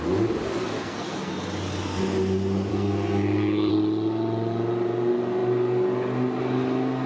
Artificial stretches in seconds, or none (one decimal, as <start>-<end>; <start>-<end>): 0.6-1.3; 2.7-3.7